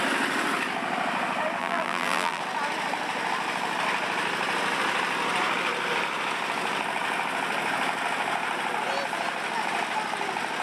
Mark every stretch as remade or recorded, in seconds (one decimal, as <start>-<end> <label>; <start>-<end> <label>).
0.0-1.6 recorded; 1.6-2.4 remade; 2.4-10.6 recorded